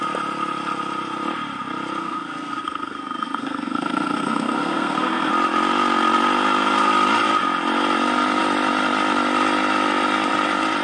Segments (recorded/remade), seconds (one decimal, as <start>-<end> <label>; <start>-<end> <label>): 0.0-2.0 recorded; 2.0-5.3 remade; 5.3-10.8 recorded

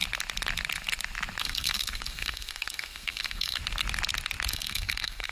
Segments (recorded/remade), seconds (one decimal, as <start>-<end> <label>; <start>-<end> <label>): 0.0-1.4 recorded; 1.4-3.6 remade; 3.6-4.5 recorded; 4.5-5.3 remade